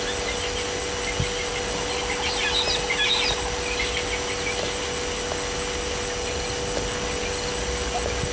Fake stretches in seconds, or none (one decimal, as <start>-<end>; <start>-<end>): none